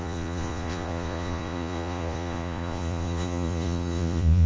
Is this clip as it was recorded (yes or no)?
no